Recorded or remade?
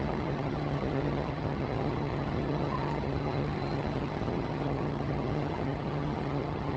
remade